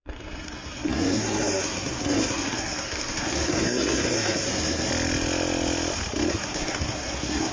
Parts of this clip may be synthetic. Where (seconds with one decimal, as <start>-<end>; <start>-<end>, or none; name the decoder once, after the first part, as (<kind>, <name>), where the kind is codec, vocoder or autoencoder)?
0.0-4.9 (codec, SNAC); 6.3-7.5